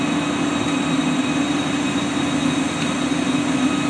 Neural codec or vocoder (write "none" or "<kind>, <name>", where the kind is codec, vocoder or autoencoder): none